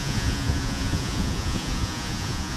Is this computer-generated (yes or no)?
yes